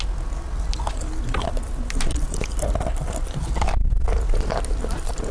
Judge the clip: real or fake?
real